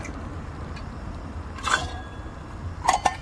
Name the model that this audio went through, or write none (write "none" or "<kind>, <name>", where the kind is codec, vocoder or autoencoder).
vocoder, BigVGAN v2